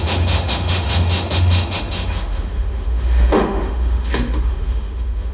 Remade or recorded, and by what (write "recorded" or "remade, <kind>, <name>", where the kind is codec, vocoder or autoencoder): remade, autoencoder, DAC-VAE